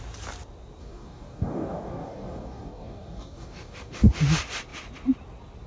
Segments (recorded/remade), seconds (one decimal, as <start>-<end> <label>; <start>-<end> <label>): 0.0-0.8 recorded; 0.8-4.2 remade; 4.2-5.7 recorded